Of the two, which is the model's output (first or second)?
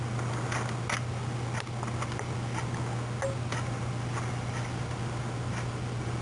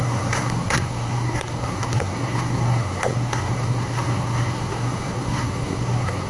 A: second